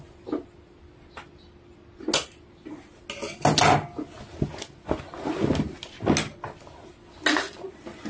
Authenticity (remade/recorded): recorded